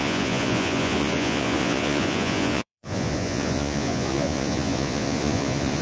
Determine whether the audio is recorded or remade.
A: remade